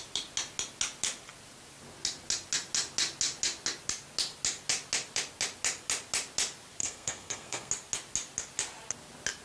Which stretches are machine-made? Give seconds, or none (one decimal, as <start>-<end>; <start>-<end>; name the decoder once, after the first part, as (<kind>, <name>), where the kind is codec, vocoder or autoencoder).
6.8-7.7 (codec, SNAC)